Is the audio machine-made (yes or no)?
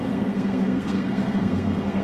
yes